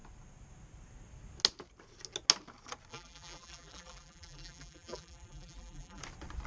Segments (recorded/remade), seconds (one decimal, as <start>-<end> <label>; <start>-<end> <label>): 0.0-2.9 recorded; 2.9-6.0 remade; 6.0-6.5 recorded

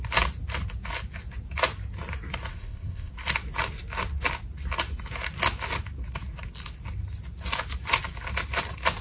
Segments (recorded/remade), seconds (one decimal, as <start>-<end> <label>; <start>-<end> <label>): 0.0-2.5 recorded; 2.5-3.1 remade; 3.1-9.0 recorded

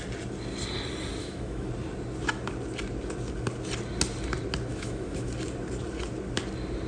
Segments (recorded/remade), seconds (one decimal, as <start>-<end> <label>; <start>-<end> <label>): 0.0-1.2 recorded; 1.2-1.7 remade; 1.7-4.7 recorded; 4.7-5.3 remade; 5.3-6.9 recorded

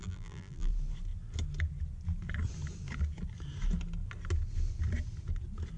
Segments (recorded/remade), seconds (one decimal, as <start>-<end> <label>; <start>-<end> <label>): 0.0-0.7 remade; 0.7-5.8 recorded

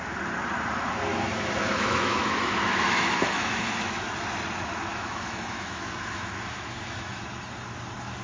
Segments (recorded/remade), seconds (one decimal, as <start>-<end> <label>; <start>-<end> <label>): 0.0-1.1 recorded; 1.1-4.1 remade; 4.1-4.9 recorded; 4.9-7.2 remade; 7.2-8.2 recorded

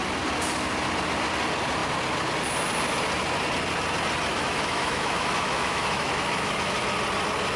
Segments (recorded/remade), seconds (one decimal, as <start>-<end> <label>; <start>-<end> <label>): 0.0-4.3 recorded; 4.3-6.8 remade; 6.8-7.6 recorded